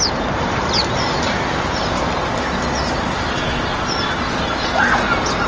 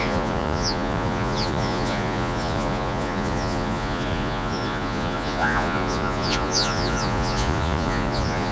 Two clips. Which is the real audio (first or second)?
first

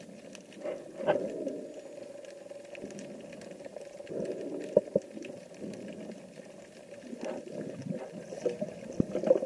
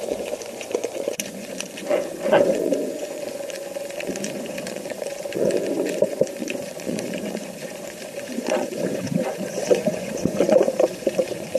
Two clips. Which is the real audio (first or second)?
first